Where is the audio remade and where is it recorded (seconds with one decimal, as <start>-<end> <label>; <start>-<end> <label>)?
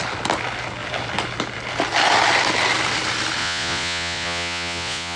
0.0-3.4 recorded; 3.4-5.2 remade